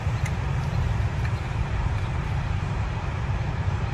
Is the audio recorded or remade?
remade